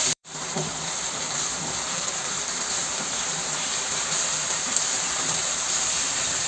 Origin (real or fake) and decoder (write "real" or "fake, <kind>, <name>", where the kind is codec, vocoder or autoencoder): fake, vocoder, BigVGAN v2